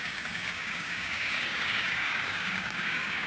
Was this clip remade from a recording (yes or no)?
yes